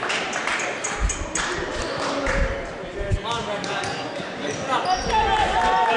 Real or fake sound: real